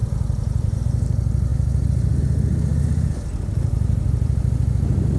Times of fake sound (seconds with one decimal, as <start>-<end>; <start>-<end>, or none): 0.0-0.8; 1.5-2.2; 2.7-4.4